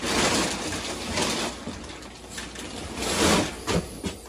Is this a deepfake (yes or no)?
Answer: no